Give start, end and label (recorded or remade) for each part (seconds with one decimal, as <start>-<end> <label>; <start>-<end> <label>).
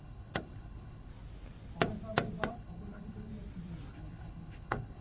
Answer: 0.0-1.1 remade; 1.1-2.5 recorded; 2.5-3.3 remade; 3.3-3.9 recorded; 3.9-5.0 remade